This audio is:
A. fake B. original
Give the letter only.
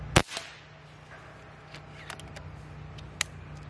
B